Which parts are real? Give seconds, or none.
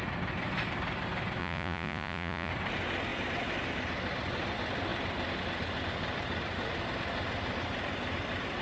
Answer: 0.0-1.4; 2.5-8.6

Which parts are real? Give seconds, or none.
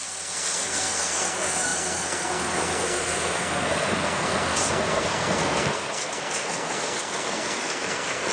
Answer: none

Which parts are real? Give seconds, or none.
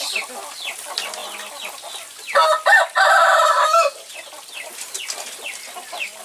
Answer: 0.0-6.2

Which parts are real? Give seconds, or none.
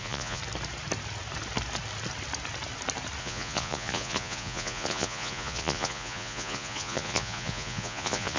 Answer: 0.4-3.2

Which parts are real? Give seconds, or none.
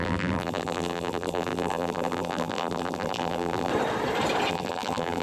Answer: 3.7-4.5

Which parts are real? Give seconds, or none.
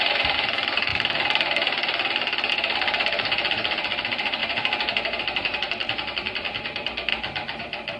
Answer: 7.1-7.6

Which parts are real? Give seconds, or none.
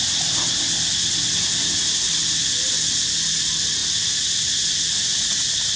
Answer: 0.0-5.8